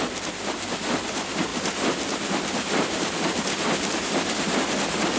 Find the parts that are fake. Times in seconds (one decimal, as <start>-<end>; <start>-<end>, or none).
1.5-4.6